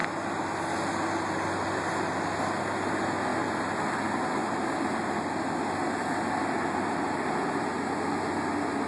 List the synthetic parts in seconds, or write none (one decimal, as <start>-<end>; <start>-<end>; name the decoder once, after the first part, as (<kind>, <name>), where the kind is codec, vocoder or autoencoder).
none

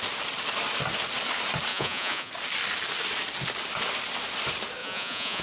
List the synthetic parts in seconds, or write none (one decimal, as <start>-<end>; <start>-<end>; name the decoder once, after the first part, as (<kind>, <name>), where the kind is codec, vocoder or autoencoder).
1.7-2.3 (vocoder, Vocos); 4.8-5.4

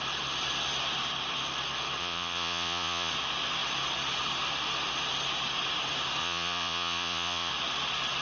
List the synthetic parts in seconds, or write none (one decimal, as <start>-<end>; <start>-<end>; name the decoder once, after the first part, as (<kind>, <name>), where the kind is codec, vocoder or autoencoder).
2.0-3.1 (vocoder, Vocos); 6.2-7.5

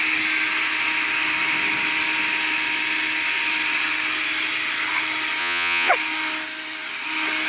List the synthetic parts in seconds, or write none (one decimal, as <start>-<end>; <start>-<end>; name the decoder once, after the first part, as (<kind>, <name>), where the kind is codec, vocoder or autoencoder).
5.4-5.9 (vocoder, Vocos)

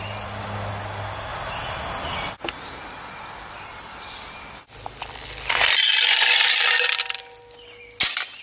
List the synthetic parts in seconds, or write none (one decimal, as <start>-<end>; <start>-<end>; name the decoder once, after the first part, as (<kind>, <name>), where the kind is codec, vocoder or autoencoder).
none

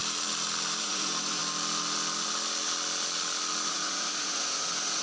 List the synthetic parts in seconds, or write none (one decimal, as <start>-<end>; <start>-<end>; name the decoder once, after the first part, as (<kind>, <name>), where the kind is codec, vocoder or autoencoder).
0.8-1.4 (vocoder, Vocos); 3.7-5.0

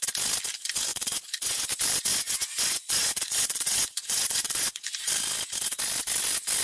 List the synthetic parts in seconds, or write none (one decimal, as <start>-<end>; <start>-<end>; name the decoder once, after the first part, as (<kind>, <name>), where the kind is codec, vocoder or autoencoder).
0.9-1.7 (vocoder, Vocos); 2.1-4.9